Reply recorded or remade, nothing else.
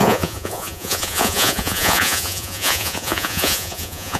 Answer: remade